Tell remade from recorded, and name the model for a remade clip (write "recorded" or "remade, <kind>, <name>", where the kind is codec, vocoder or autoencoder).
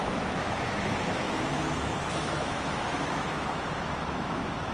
remade, autoencoder, DAC-VAE